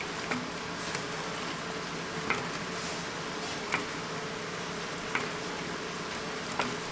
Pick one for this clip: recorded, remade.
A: recorded